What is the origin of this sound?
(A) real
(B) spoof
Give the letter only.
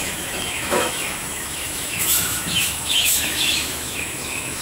B